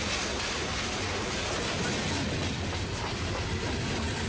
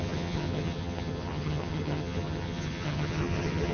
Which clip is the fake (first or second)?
second